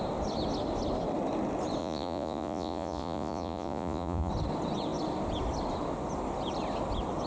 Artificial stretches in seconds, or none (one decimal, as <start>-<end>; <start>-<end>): 1.8-4.3